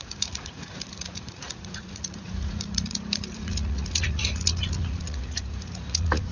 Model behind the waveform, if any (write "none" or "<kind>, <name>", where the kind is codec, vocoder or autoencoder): vocoder, Vocos